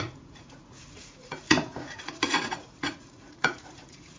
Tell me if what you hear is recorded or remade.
remade